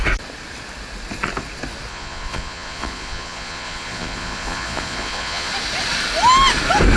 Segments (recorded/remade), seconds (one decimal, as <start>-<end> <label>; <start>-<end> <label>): 0.0-1.9 recorded; 1.9-5.5 remade; 5.5-7.0 recorded